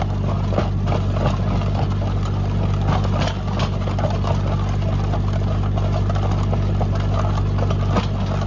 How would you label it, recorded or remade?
recorded